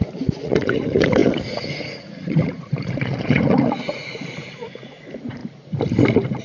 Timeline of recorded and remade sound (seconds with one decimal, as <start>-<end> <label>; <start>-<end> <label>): 0.0-5.4 remade; 5.4-6.4 recorded